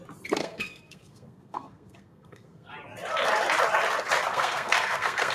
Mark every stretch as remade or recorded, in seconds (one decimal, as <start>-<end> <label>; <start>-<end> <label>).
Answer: 0.0-0.4 recorded; 0.4-2.7 remade; 2.7-4.3 recorded; 4.3-5.3 remade